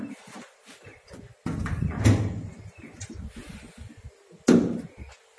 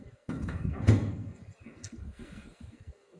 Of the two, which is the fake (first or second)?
second